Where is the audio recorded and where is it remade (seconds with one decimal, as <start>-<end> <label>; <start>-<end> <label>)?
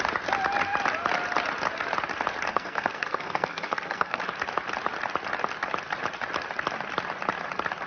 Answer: 0.0-2.5 recorded; 2.5-4.2 remade; 4.2-7.9 recorded